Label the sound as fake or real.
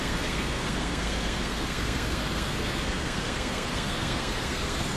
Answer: fake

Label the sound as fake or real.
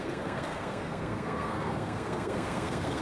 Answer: fake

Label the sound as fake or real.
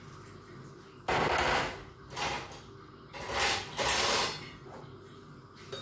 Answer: real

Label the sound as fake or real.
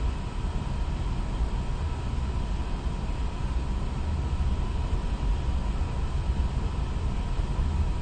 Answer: real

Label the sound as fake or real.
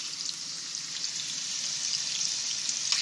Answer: real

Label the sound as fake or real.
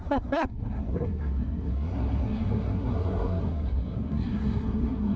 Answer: fake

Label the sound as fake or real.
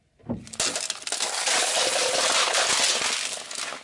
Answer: real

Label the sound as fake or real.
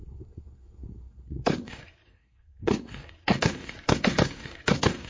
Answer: fake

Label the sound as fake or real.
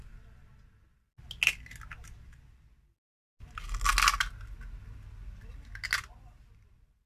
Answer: real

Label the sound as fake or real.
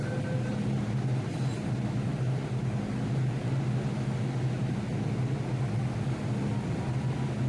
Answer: real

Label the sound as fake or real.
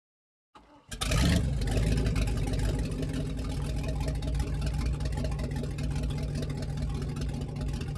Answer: real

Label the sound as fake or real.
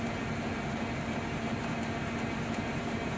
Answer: real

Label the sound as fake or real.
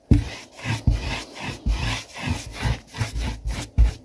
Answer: real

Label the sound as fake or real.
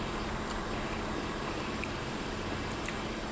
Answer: real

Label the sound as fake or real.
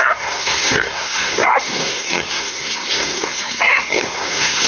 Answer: fake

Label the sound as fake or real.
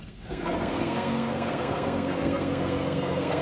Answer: fake